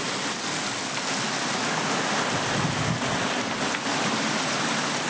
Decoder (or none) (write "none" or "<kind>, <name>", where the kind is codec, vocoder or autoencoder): none